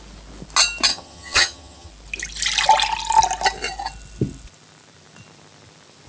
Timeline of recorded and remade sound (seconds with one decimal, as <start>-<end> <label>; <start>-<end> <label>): 0.0-0.9 recorded; 0.9-1.9 remade; 1.9-6.1 recorded